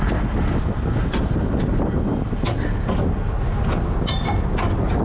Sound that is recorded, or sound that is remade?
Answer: recorded